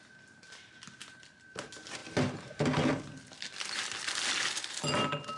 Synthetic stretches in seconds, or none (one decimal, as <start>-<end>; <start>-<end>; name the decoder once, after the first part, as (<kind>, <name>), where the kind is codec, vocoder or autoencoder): none